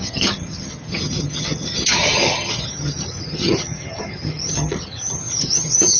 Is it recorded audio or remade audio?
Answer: remade